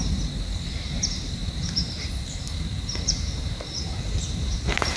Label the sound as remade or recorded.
remade